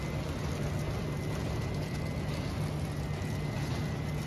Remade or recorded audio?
recorded